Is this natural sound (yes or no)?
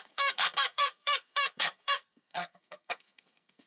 no